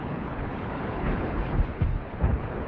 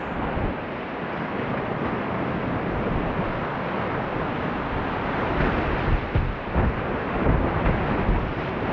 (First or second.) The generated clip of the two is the first